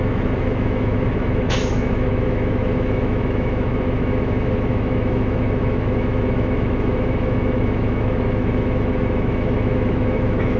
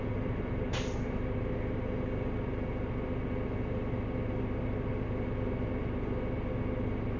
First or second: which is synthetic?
first